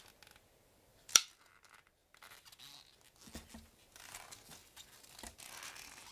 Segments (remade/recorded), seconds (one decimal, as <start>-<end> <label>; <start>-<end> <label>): 0.0-0.9 recorded; 0.9-1.5 remade; 1.5-4.6 recorded; 4.6-5.4 remade; 5.4-6.1 recorded